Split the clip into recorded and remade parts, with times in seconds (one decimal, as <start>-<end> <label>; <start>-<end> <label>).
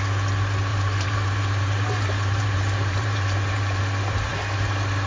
0.0-0.7 recorded; 0.7-3.8 remade; 3.8-5.1 recorded